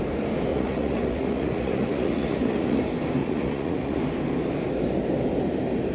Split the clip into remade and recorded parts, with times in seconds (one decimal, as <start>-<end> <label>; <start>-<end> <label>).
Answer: 0.0-0.5 recorded; 0.5-2.8 remade; 2.8-3.2 recorded; 3.2-4.0 remade; 4.0-5.9 recorded